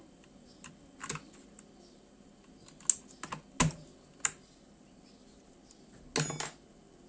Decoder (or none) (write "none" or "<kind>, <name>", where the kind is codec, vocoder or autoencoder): none